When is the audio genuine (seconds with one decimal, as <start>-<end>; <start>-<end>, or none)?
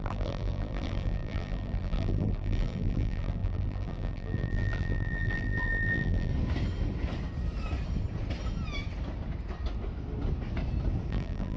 6.3-11.1